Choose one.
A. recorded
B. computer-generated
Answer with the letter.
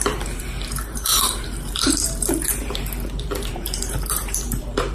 B